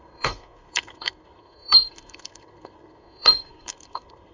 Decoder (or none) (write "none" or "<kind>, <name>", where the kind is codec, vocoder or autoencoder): codec, SNAC